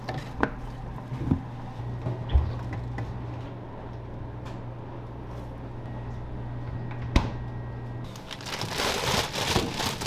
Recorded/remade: recorded